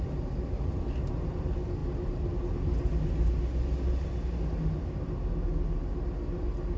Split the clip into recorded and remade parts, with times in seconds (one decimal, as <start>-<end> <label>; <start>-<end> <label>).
0.0-6.8 recorded

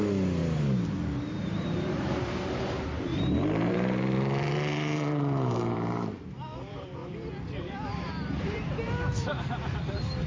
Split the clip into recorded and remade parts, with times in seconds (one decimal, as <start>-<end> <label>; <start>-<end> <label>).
0.0-0.4 remade; 0.4-1.4 recorded; 1.4-7.0 remade; 7.0-7.6 recorded; 7.6-9.3 remade; 9.3-10.3 recorded

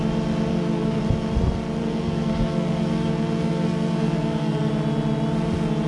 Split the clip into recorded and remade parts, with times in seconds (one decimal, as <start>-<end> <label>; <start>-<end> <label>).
0.0-0.5 recorded; 0.5-1.0 remade; 1.0-1.8 recorded; 1.8-4.7 remade; 4.7-5.9 recorded

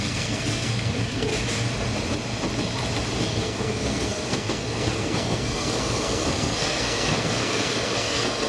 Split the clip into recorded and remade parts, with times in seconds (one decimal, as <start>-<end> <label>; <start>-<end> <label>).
0.0-1.3 remade; 1.3-3.2 recorded; 3.2-8.5 remade

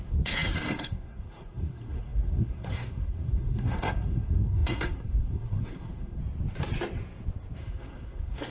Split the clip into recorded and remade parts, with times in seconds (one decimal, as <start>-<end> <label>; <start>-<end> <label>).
0.0-6.2 remade; 6.2-7.6 recorded; 7.6-8.5 remade

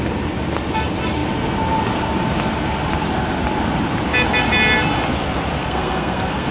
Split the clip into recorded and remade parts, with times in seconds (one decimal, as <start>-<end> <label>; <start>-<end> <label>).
0.0-5.6 recorded; 5.6-6.5 remade

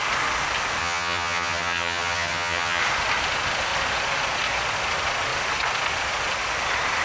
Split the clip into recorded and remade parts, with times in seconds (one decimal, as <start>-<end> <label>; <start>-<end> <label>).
0.0-0.8 recorded; 0.8-2.8 remade; 2.8-7.0 recorded

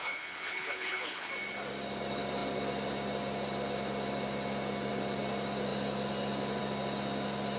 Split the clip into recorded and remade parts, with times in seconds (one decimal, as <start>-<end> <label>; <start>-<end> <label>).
0.0-1.3 remade; 1.3-7.6 recorded